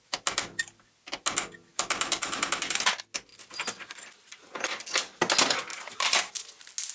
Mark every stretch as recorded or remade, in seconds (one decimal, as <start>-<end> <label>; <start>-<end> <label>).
0.0-1.7 recorded; 1.7-2.7 remade; 2.7-5.7 recorded; 5.7-6.3 remade; 6.3-6.9 recorded